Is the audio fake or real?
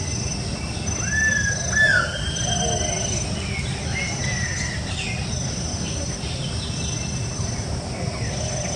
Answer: real